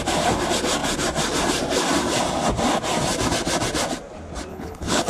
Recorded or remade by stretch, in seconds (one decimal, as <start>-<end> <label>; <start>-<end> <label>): 0.0-4.5 recorded; 4.5-5.1 remade